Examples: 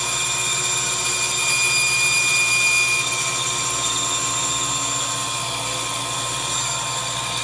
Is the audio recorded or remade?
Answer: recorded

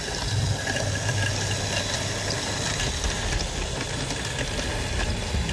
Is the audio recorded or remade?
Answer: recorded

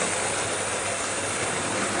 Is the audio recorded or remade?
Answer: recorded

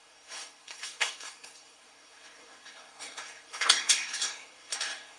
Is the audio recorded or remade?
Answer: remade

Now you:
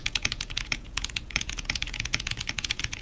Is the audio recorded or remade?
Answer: remade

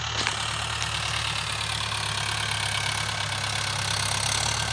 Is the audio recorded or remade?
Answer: recorded